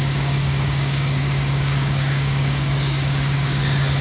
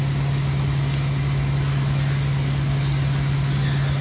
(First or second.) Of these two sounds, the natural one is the second